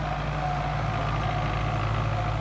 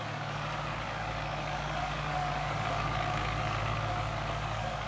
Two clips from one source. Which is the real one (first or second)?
first